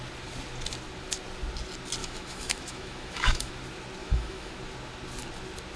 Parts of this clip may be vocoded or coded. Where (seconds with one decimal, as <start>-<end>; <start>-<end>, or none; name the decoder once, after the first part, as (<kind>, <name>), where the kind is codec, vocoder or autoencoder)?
2.0-3.5 (autoencoder, DAC-VAE); 4.0-4.5